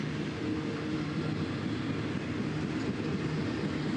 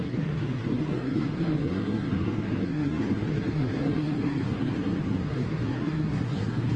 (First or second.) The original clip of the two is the first